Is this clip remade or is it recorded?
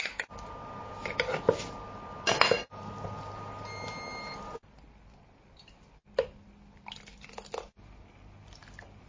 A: recorded